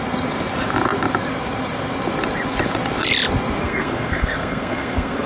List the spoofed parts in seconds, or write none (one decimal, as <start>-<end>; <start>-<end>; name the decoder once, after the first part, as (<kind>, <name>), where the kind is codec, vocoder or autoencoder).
3.6-5.3 (codec, SNAC)